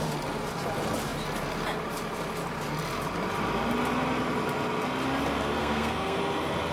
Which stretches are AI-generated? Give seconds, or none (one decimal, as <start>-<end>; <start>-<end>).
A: 5.6-6.2